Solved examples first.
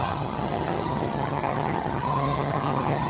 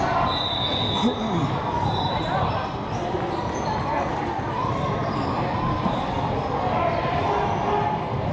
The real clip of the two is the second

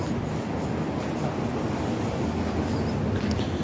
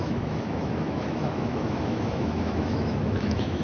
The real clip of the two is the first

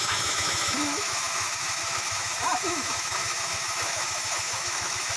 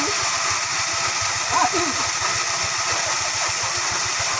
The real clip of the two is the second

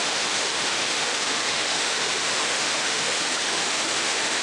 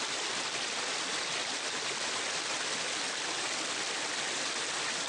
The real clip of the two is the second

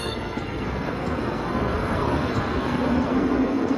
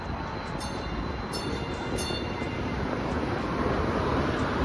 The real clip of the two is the second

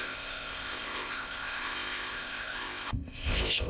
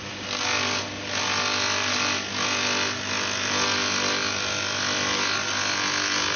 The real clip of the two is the second